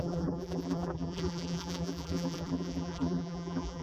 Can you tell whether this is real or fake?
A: fake